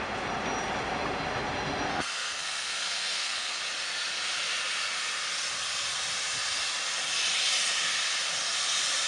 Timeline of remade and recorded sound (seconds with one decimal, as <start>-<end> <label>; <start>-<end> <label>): 0.0-1.9 recorded; 1.9-3.6 remade; 3.6-9.1 recorded